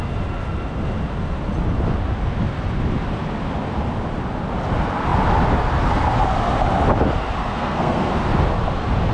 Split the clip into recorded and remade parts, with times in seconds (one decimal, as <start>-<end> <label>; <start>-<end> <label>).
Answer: 0.0-7.4 recorded; 7.4-8.1 remade; 8.1-9.1 recorded